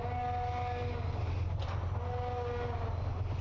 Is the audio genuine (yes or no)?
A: yes